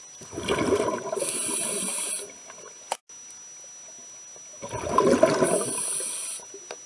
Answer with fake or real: real